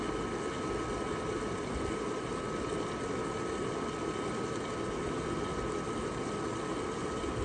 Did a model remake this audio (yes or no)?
no